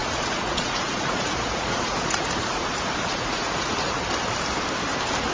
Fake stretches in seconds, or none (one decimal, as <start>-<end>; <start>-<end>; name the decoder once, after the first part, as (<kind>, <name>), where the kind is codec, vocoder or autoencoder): 0.0-2.7 (vocoder, Vocos); 3.1-4.0